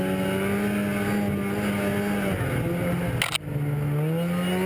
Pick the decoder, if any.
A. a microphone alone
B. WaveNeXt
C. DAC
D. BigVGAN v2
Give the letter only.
A